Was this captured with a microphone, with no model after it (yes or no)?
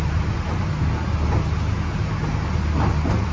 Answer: yes